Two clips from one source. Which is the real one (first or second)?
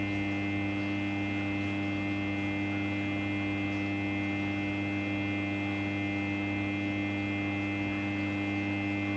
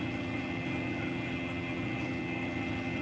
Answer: first